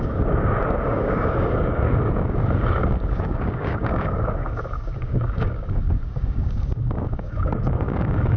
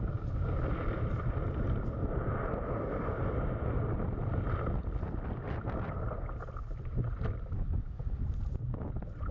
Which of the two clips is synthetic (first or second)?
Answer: first